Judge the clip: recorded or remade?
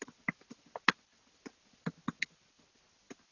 recorded